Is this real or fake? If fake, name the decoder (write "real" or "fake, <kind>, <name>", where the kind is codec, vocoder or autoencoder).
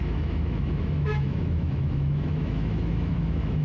fake, autoencoder, DAC-VAE